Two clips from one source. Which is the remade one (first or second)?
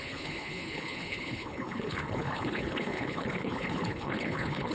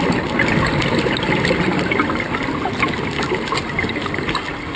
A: first